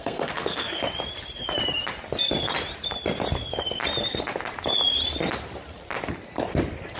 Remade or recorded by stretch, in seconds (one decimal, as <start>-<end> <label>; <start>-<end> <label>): 0.0-0.8 remade; 0.8-7.0 recorded